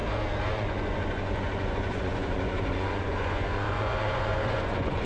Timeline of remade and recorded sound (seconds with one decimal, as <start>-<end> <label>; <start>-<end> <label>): 0.0-0.5 recorded; 0.5-5.1 remade